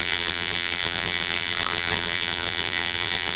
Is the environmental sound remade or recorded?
remade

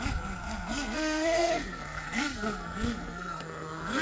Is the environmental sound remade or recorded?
remade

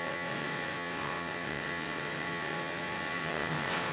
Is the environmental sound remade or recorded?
remade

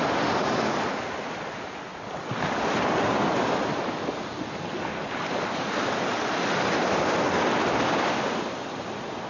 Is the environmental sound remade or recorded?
recorded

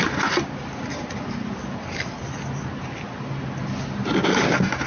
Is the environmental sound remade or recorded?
recorded